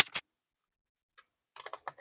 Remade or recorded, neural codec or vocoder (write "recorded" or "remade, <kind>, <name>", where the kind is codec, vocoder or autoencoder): recorded